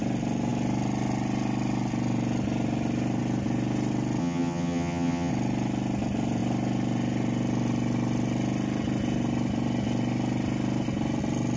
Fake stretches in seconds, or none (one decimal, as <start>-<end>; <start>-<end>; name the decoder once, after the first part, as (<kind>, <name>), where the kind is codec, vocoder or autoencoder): 4.2-5.3 (vocoder, HiFi-GAN)